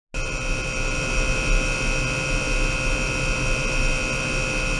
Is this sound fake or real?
real